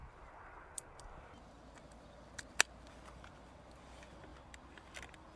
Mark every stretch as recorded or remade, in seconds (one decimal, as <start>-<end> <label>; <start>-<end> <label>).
0.0-5.4 recorded